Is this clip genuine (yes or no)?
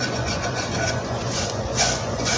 no